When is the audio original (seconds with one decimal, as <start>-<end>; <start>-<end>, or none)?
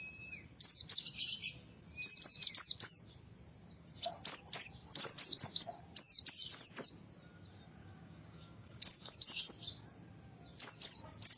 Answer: 0.0-7.8; 9.1-11.4